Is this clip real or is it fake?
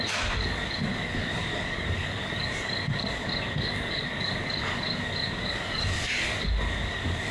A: fake